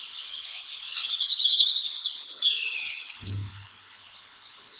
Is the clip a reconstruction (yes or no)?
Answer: yes